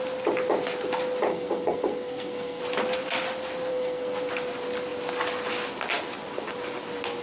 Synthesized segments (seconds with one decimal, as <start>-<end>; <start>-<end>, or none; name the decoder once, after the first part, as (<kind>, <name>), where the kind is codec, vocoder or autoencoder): 1.3-2.6 (codec, SNAC); 3.7-4.3